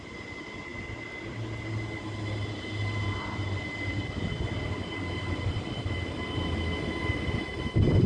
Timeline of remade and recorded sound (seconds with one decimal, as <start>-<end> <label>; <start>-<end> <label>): 0.0-8.1 recorded